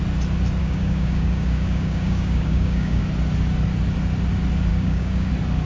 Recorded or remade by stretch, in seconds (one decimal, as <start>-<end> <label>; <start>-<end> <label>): 0.0-0.6 recorded; 0.6-3.0 remade; 3.0-4.7 recorded; 4.7-5.3 remade; 5.3-5.7 recorded